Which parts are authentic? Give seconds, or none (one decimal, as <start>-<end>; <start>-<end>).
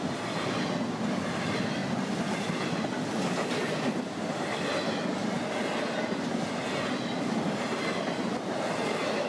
0.0-9.3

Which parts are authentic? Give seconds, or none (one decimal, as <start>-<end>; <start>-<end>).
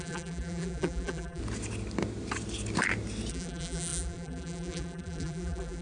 1.4-3.3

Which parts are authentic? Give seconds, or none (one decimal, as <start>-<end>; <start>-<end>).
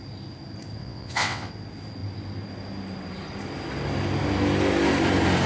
0.0-0.8; 1.5-5.5